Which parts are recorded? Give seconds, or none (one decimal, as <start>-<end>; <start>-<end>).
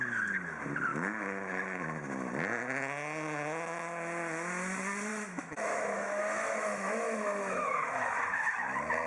0.0-0.9; 1.8-5.1; 8.5-9.1